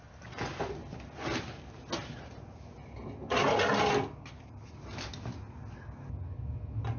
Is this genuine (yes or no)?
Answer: yes